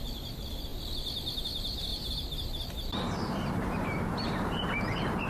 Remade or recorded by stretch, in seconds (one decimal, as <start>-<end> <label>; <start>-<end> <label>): 0.0-1.9 recorded; 1.9-5.3 remade